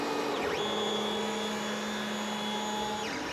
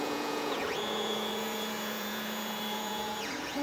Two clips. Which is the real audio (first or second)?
first